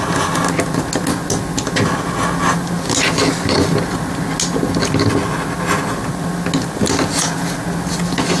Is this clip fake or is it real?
real